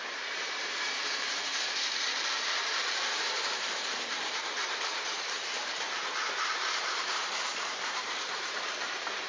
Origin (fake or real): fake